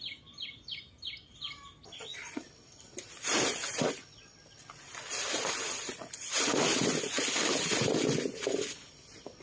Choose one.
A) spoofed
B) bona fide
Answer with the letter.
B